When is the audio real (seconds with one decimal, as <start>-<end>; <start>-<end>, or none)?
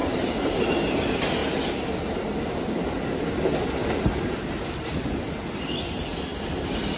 0.7-7.0